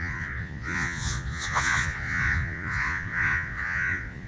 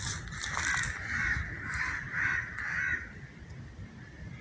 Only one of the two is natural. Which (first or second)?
second